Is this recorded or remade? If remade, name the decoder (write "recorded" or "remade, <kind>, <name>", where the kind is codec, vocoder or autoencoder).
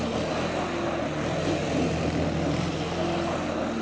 recorded